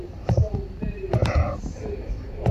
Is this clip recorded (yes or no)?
no